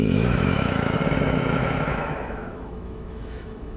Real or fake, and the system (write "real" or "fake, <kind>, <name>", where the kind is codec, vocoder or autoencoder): fake, autoencoder, DAC-VAE